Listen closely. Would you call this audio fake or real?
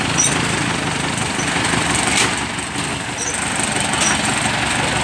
real